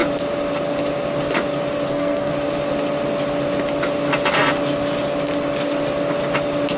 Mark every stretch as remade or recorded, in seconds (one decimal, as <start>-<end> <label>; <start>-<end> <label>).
0.0-1.9 recorded; 1.9-2.3 remade; 2.3-6.8 recorded